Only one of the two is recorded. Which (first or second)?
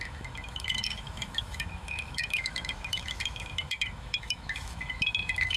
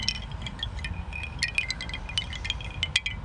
second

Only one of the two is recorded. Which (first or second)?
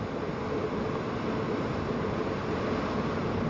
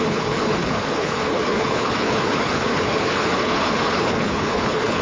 first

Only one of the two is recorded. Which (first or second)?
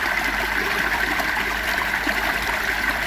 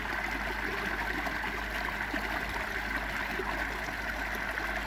second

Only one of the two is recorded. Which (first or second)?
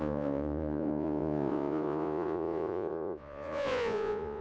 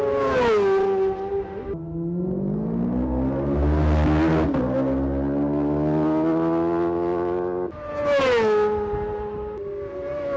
second